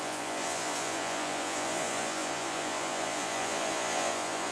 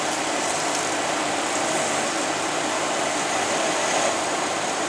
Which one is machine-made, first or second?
first